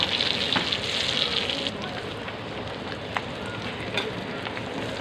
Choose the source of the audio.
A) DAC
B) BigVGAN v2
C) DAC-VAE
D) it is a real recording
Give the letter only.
D